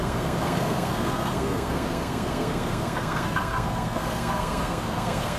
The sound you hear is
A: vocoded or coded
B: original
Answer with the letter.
A